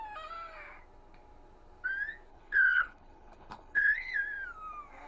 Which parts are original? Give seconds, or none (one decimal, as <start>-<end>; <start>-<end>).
0.0-2.3; 4.1-5.1